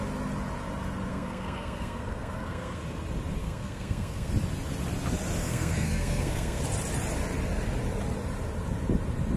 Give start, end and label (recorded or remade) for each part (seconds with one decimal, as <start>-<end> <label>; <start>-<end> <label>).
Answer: 0.0-1.1 recorded; 1.1-2.8 remade; 2.8-3.4 recorded; 3.4-4.3 remade; 4.3-5.4 recorded; 5.4-6.6 remade; 6.6-9.4 recorded